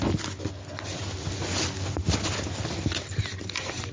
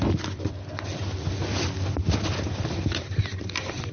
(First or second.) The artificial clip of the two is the second